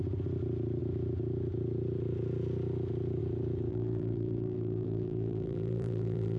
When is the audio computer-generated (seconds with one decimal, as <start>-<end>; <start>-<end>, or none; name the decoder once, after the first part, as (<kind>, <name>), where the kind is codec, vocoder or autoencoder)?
3.7-6.4 (vocoder, BigVGAN v2)